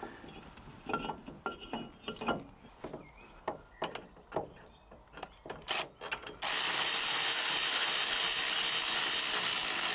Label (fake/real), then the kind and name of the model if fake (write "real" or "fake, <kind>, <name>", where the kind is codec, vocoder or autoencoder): real